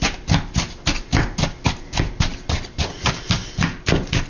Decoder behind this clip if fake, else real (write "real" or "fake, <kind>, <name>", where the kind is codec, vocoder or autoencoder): real